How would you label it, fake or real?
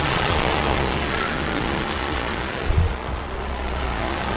fake